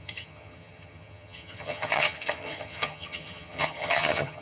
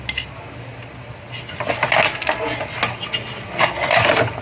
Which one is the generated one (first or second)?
first